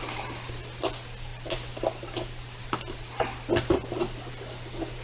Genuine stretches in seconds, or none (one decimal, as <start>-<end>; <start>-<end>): 0.0-5.0